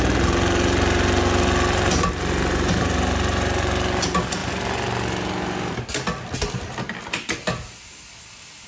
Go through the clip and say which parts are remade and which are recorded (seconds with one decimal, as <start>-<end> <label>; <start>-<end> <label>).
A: 0.0-8.7 recorded